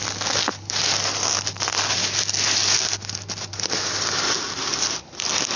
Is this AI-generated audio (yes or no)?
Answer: no